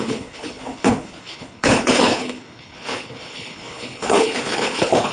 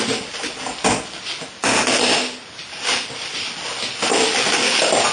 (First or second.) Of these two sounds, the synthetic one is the first